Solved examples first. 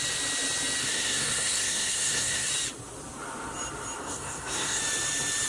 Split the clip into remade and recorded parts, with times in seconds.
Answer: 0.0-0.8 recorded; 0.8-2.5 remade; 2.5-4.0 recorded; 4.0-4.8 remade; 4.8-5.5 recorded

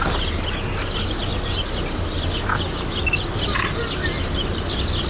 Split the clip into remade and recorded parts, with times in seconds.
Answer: 0.0-5.1 recorded

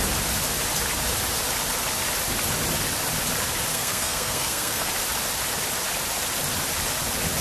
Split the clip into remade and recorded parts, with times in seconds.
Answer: 0.0-3.7 recorded; 3.7-4.9 remade; 4.9-7.4 recorded